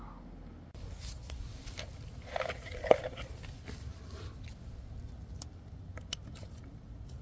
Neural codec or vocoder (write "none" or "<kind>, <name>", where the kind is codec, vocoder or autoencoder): none